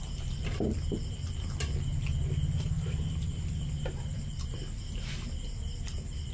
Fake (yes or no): no